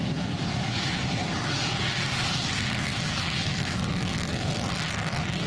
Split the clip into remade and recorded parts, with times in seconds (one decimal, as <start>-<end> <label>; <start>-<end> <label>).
0.0-2.9 recorded; 2.9-4.5 remade; 4.5-5.5 recorded